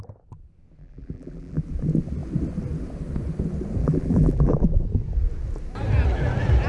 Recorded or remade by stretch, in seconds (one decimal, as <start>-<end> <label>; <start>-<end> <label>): 0.0-0.8 recorded; 0.8-1.6 remade; 1.6-3.8 recorded; 3.8-4.5 remade; 4.5-6.7 recorded